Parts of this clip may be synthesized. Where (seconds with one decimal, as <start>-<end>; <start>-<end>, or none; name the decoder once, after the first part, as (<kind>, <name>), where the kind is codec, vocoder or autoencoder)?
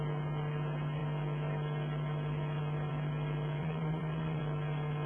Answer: 3.6-4.4 (vocoder, Vocos)